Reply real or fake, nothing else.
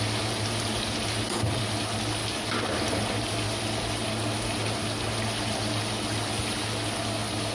real